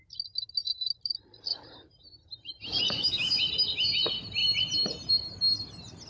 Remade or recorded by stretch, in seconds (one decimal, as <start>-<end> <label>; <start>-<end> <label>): 0.0-1.5 recorded; 1.5-2.8 remade; 2.8-4.4 recorded; 4.4-5.1 remade; 5.1-6.1 recorded